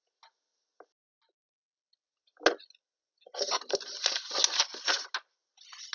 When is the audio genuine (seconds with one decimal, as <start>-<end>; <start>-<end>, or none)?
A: 0.0-5.9